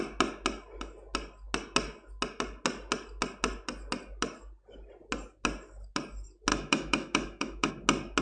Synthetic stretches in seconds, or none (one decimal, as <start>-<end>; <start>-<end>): 6.5-7.7

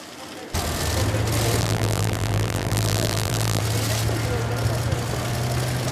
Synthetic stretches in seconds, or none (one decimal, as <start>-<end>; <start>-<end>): 1.6-3.6